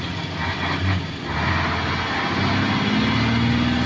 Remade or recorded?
recorded